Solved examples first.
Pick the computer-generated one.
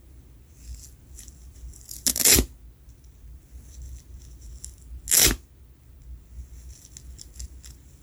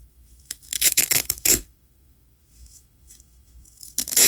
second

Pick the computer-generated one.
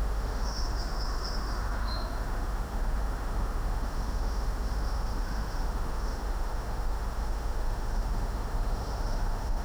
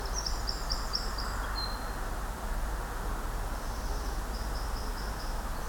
first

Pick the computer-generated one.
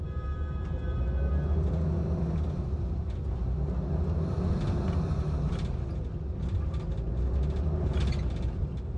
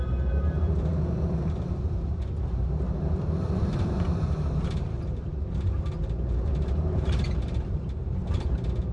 second